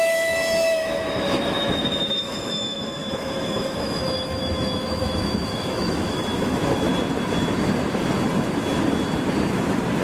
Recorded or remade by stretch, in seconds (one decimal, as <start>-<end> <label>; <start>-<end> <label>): 0.0-6.9 remade; 6.9-10.0 recorded

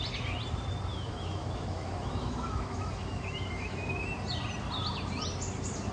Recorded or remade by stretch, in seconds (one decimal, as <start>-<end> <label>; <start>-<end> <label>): 0.0-0.9 recorded; 0.9-3.9 remade; 3.9-5.9 recorded